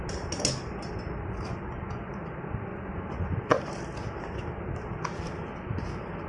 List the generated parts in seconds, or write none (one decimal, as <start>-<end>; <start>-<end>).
1.7-2.2; 2.7-3.6